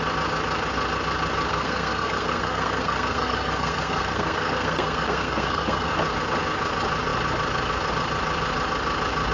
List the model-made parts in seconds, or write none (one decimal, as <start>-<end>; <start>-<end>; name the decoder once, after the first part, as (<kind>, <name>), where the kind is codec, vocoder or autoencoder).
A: 1.5-5.9 (codec, SNAC)